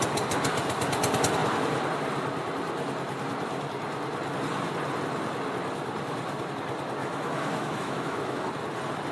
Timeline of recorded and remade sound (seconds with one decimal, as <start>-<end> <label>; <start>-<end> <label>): 0.0-7.0 recorded; 7.0-8.5 remade; 8.5-9.1 recorded